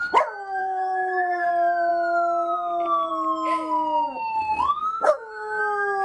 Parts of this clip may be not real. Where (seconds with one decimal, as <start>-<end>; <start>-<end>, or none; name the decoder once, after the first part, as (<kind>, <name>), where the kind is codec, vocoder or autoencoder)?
0.6-1.5 (codec, SNAC); 4.8-5.6